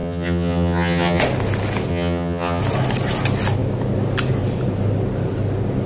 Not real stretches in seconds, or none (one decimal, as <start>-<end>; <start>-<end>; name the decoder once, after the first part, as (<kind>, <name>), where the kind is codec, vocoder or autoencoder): 0.0-1.2 (vocoder, HiFi-GAN); 1.9-2.6